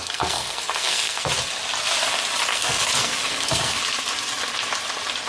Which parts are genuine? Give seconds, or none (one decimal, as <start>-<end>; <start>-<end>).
1.3-2.5; 3.8-5.3